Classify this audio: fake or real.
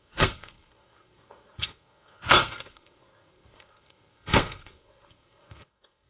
fake